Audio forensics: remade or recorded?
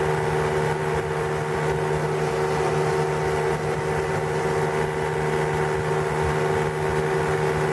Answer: recorded